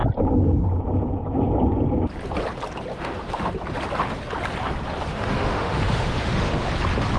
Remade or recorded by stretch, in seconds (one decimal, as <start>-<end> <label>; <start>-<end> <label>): 0.0-2.9 recorded; 2.9-3.5 remade; 3.5-5.1 recorded; 5.1-6.7 remade; 6.7-7.2 recorded